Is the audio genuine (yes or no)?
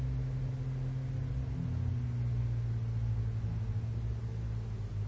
yes